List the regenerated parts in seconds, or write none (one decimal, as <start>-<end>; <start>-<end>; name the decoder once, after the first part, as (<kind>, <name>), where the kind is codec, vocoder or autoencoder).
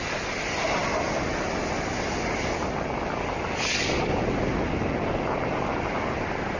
none